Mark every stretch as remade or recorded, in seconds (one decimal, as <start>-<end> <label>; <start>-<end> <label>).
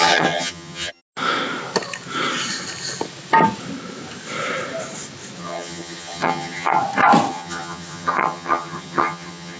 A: 0.0-1.0 remade; 1.0-5.4 recorded; 5.4-6.8 remade; 6.8-7.3 recorded; 7.3-9.6 remade